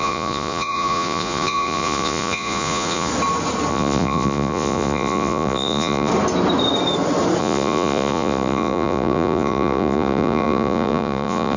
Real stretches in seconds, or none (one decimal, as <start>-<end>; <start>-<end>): 3.1-3.7; 6.1-7.4